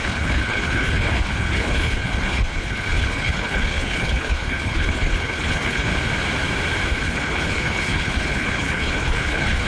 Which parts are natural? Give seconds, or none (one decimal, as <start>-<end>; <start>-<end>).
5.9-7.0